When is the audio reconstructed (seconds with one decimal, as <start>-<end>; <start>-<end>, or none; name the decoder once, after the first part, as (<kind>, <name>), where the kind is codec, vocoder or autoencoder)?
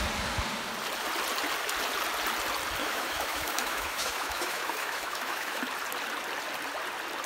2.8-5.6 (autoencoder, DAC-VAE)